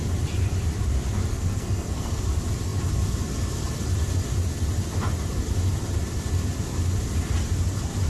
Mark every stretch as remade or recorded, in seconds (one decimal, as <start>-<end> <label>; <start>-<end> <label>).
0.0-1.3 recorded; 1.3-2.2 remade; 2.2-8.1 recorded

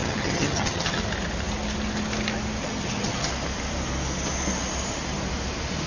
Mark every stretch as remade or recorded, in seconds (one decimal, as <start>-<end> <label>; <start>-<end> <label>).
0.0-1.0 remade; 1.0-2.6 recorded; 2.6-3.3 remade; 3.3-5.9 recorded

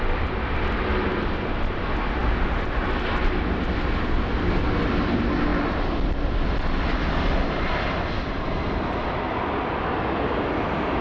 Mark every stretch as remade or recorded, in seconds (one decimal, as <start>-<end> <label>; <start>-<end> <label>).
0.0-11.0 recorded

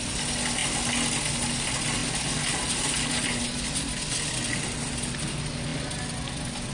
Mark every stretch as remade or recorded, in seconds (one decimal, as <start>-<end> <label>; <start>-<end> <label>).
0.0-6.7 recorded

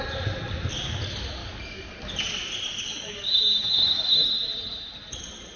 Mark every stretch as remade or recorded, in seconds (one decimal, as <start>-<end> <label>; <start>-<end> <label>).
0.0-1.4 recorded; 1.4-1.9 remade; 1.9-2.9 recorded; 2.9-4.2 remade; 4.2-5.6 recorded